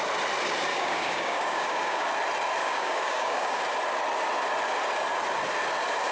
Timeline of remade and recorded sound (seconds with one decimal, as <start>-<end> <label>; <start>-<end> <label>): 0.0-0.7 recorded; 0.7-2.1 remade; 2.1-2.6 recorded; 2.6-3.6 remade; 3.6-6.1 recorded